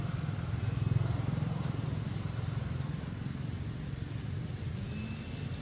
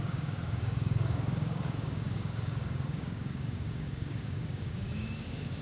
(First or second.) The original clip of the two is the first